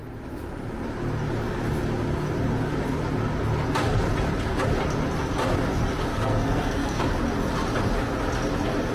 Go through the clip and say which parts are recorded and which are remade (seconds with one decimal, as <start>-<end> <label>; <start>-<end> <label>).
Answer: 0.0-6.1 recorded; 6.1-7.0 remade; 7.0-8.9 recorded